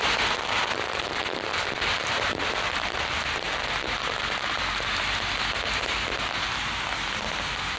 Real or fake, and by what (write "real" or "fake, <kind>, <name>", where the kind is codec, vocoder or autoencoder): real